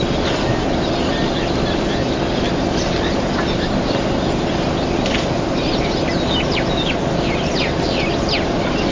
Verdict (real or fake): real